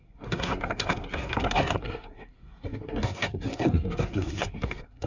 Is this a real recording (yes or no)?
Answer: no